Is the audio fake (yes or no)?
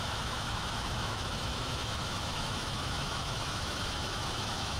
yes